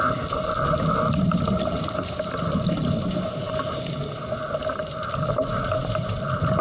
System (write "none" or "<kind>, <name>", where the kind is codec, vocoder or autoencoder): none